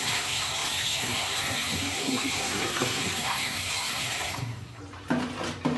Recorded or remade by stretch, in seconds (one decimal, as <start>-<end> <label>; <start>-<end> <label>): 0.0-4.8 remade; 4.8-5.8 recorded

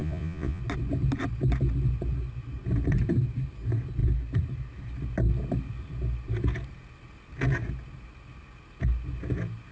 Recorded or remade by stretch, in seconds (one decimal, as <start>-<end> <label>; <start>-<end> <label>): 0.0-0.6 remade; 0.6-9.7 recorded

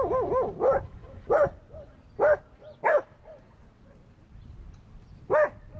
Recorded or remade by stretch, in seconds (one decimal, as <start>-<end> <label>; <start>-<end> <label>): 0.0-5.8 recorded